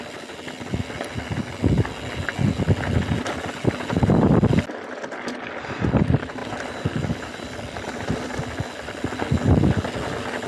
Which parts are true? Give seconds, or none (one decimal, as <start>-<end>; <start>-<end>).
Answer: 0.0-6.4; 8.4-10.5